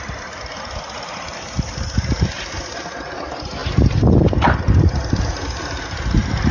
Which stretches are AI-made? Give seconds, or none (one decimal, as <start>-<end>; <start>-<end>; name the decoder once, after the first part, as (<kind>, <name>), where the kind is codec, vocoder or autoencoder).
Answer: none